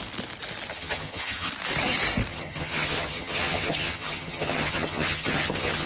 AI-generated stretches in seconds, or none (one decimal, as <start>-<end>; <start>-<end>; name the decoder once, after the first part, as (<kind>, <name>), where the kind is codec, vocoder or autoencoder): 0.7-1.5 (vocoder, HiFi-GAN); 2.3-5.9